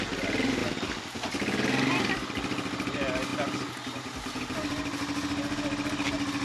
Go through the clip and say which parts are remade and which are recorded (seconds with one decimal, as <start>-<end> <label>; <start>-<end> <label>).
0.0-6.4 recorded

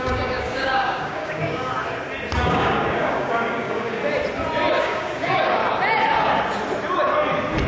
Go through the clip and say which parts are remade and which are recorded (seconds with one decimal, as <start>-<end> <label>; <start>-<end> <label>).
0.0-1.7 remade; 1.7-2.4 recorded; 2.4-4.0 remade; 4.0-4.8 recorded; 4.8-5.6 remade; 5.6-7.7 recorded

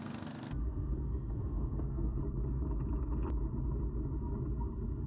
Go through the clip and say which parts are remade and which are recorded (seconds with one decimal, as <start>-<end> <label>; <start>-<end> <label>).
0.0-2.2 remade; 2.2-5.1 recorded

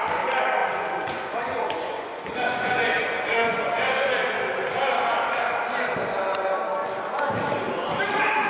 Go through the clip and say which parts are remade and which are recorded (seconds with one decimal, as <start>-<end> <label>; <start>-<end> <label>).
0.0-0.6 recorded; 0.6-4.1 remade; 4.1-8.5 recorded